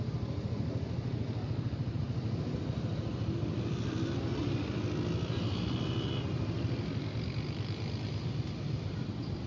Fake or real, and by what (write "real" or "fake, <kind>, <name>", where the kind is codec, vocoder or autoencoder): real